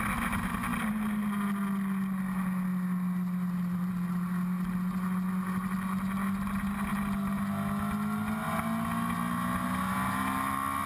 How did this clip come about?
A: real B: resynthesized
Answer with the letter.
A